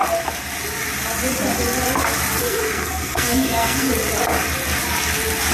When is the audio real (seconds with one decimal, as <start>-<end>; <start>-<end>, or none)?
0.0-2.4; 3.9-5.5